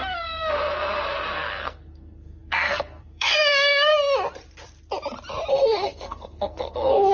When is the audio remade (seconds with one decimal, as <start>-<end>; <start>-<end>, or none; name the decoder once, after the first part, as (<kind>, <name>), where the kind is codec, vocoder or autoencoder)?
0.0-3.9 (codec, SNAC); 5.5-7.1